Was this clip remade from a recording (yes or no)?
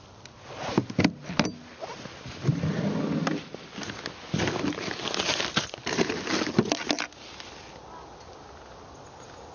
no